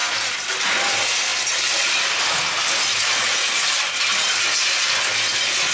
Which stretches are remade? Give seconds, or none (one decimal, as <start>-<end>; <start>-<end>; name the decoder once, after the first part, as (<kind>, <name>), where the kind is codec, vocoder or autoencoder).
none